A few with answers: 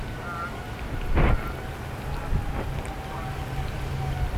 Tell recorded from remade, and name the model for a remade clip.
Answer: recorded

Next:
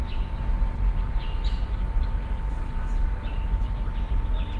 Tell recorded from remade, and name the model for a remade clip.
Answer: recorded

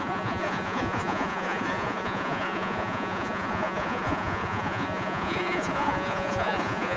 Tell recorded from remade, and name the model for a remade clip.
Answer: remade, vocoder, Vocos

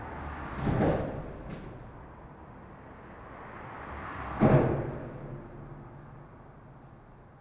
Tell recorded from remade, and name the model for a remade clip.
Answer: recorded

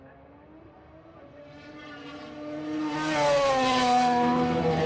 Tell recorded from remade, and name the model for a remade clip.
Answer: recorded